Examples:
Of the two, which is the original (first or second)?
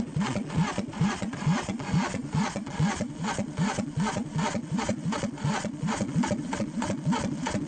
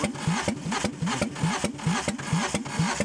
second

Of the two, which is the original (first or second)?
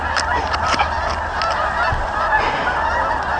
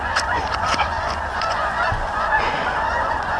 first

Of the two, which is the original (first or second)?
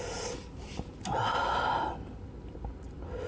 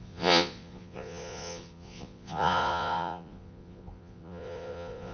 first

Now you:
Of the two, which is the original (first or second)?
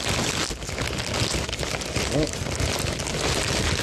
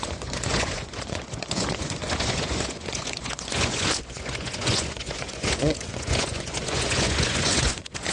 first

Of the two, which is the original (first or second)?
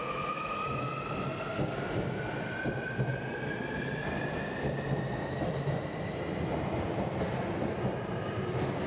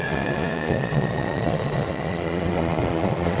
first